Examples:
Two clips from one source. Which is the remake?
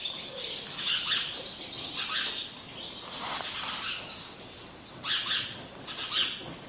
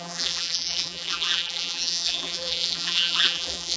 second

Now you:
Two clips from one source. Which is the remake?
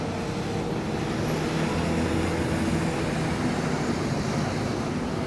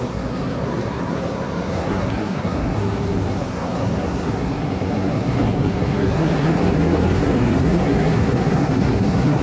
second